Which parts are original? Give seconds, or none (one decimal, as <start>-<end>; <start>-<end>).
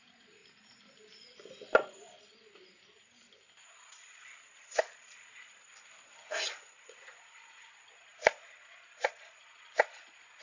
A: 0.4-3.7; 5.7-6.6